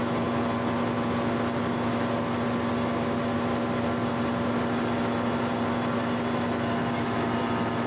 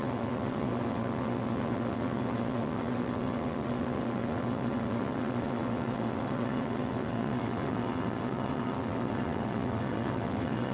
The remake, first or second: second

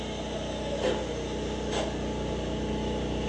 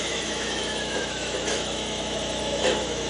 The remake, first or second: second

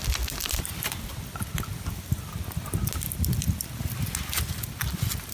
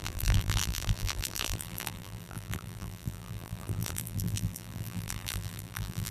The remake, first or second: second